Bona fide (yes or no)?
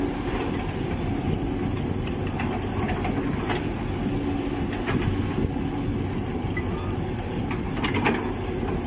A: yes